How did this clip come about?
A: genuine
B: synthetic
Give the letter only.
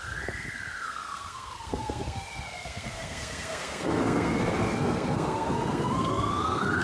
B